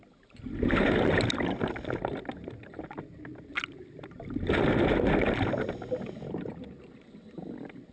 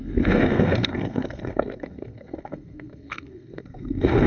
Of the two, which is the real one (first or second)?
first